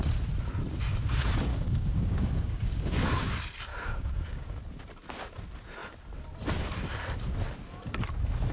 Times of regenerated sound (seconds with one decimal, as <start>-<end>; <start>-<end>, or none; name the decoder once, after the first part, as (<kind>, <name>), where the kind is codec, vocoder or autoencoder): 1.5-3.3 (codec, DAC); 3.7-4.6